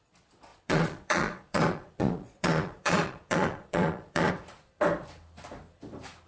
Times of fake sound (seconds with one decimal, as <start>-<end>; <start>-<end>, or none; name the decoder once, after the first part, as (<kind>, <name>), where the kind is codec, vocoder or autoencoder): 0.5-4.3 (vocoder, Vocos)